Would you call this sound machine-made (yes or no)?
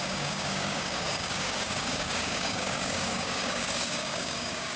yes